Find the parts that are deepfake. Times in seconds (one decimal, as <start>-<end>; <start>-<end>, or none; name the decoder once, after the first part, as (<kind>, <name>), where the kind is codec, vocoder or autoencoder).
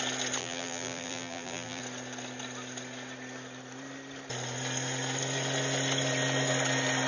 0.4-1.8 (vocoder, BigVGAN v2)